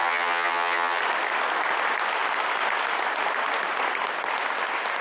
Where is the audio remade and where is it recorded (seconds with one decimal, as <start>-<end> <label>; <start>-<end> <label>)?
0.0-1.0 remade; 1.0-5.0 recorded